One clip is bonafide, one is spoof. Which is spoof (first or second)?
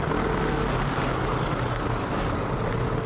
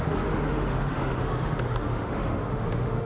second